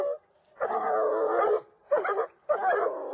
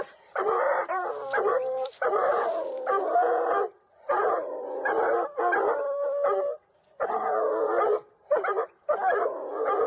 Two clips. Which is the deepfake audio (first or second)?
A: second